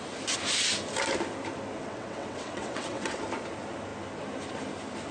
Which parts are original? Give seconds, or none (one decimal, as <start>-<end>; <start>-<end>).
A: 0.0-1.8; 3.2-5.1